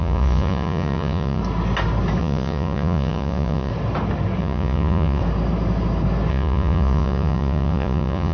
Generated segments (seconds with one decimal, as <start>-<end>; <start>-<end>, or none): 0.0-1.4; 2.2-3.7; 4.4-5.2; 6.3-8.3